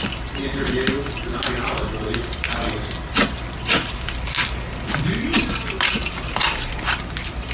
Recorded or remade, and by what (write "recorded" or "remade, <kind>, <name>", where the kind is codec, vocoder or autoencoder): recorded